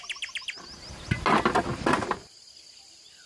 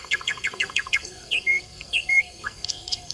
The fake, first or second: second